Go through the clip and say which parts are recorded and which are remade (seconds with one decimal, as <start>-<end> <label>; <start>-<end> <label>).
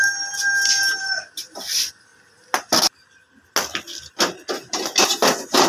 0.0-5.7 recorded